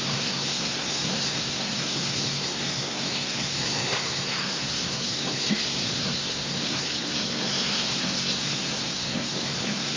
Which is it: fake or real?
fake